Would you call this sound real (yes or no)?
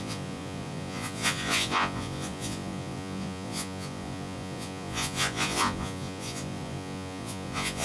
no